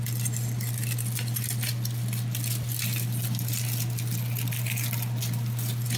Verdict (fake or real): real